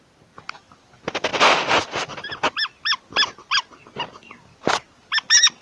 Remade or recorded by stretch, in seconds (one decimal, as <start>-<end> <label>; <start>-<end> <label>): 0.0-5.6 recorded